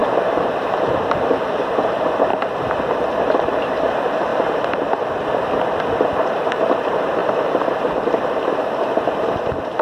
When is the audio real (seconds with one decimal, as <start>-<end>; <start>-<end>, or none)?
2.3-3.4; 4.3-6.1; 7.2-8.6